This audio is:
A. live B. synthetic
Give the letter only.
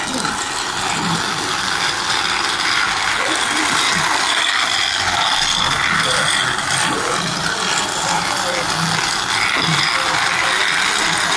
A